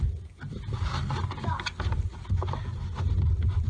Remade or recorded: recorded